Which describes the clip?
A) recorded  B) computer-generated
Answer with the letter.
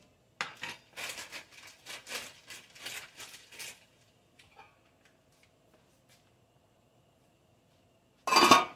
A